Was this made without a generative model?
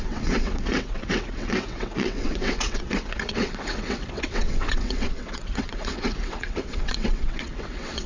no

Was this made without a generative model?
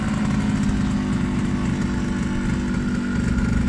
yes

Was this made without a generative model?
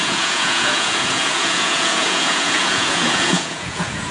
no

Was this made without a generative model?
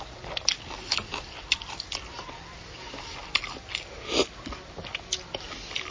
yes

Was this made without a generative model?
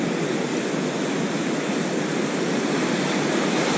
yes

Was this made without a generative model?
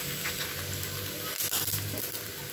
yes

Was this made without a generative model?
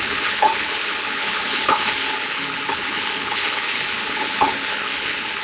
no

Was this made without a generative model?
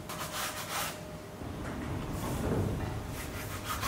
yes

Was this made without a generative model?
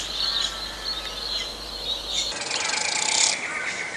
yes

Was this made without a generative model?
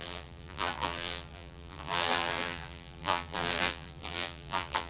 no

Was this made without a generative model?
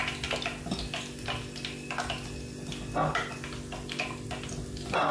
yes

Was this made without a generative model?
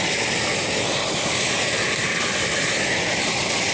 yes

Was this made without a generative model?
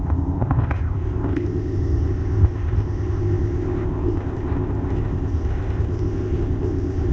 no